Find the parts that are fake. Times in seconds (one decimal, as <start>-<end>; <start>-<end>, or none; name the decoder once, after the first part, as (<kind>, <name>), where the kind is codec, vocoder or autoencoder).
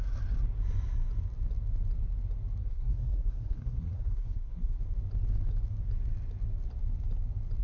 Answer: 2.6-4.8 (codec, SNAC)